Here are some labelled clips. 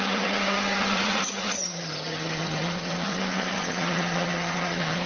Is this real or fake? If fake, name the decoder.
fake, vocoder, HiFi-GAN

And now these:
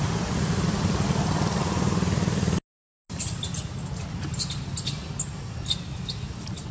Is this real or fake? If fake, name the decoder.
real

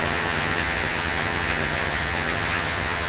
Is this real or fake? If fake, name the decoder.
fake, vocoder, HiFi-GAN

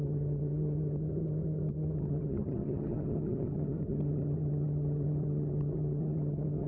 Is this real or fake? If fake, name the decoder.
fake, vocoder, HiFi-GAN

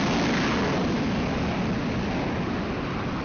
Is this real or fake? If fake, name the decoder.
real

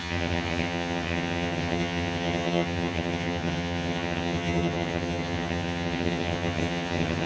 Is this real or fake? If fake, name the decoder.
fake, vocoder, HiFi-GAN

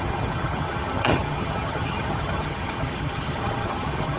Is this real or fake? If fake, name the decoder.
fake, vocoder, HiFi-GAN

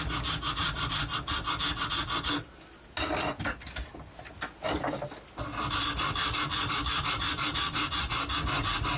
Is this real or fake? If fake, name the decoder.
real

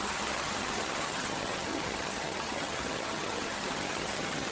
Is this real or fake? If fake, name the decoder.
fake, vocoder, HiFi-GAN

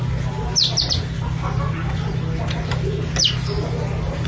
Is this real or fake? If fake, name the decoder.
real